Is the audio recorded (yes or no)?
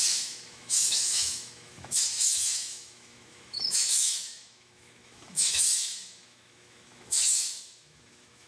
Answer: no